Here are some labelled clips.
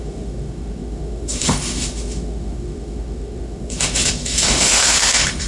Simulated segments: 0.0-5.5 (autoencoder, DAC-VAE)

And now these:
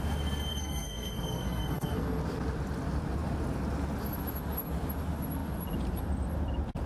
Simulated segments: 0.5-2.2 (codec, SNAC)

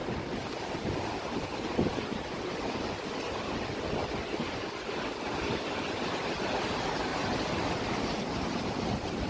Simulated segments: 0.0-3.9 (vocoder, BigVGAN v2); 7.1-8.0

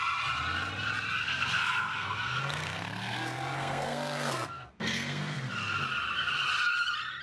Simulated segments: 1.2-5.5 (codec, SNAC)

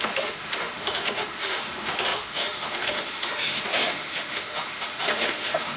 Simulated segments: 0.0-5.8 (autoencoder, DAC-VAE)

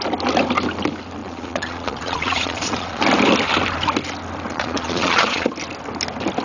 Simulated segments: 1.2-3.0 (vocoder, Vocos); 4.5-5.5

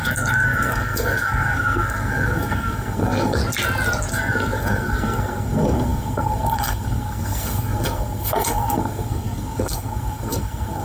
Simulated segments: 0.0-3.4 (codec, SNAC); 4.1-10.8